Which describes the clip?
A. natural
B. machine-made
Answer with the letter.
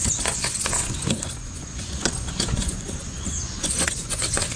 B